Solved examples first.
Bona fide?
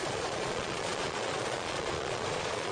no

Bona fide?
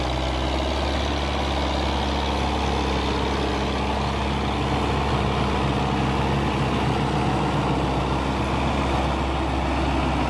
yes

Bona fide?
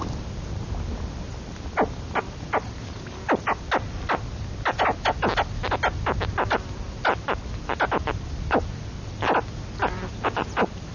yes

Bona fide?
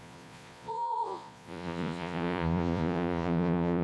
no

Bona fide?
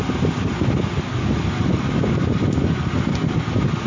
yes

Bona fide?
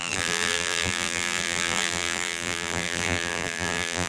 no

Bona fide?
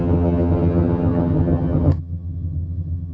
no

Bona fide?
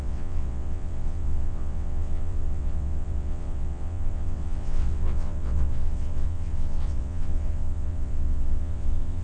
no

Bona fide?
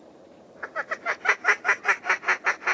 yes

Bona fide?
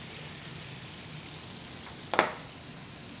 yes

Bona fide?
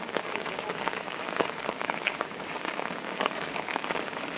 no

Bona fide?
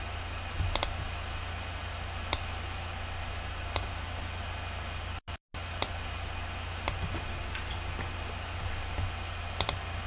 yes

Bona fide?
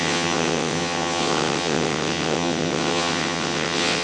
no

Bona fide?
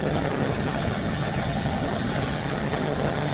no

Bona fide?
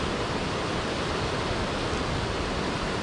yes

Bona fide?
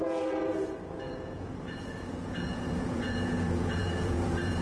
no